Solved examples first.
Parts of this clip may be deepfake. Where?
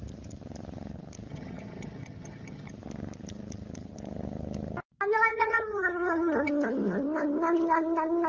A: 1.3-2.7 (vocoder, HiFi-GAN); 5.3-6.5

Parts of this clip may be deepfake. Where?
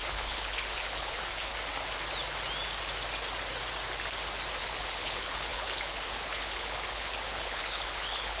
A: 0.0-1.5 (codec, HILCodec); 4.6-8.4